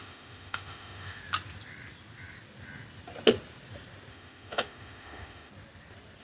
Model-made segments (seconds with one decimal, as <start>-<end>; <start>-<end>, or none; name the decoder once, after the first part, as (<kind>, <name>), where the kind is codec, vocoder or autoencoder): 0.0-1.2 (autoencoder, DAC-VAE); 4.1-5.5